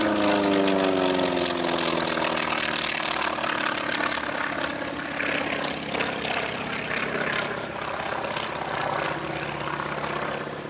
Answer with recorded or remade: recorded